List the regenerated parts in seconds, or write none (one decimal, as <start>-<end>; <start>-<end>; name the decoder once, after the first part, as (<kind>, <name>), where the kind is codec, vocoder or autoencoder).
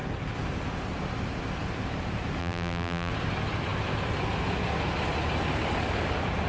2.4-3.1 (vocoder, BigVGAN v2)